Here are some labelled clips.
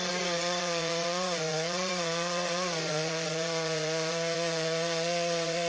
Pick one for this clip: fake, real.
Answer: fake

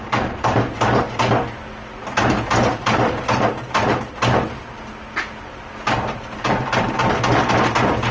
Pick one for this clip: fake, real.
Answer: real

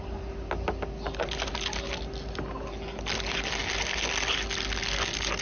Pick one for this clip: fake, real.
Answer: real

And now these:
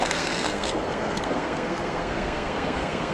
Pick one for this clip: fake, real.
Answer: fake